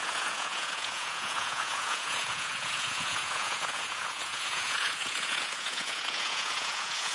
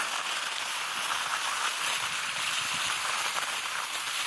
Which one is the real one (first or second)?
second